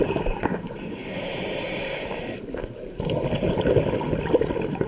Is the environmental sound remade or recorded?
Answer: remade